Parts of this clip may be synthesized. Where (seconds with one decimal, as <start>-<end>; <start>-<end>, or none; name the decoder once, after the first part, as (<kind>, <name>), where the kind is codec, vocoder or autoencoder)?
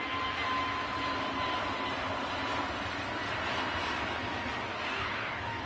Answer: 4.7-5.7 (codec, DAC)